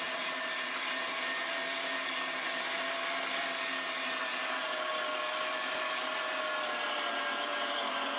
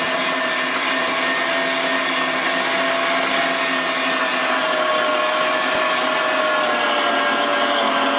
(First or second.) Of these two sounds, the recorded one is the second